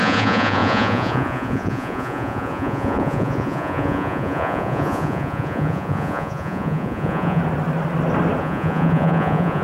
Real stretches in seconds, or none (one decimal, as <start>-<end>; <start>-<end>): 7.4-8.4